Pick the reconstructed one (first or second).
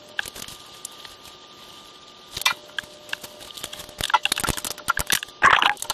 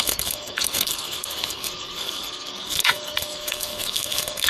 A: second